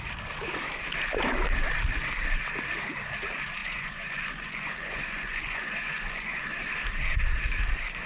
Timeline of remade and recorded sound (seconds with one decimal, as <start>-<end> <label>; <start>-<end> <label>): 0.0-3.6 recorded; 3.6-6.4 remade; 6.4-8.1 recorded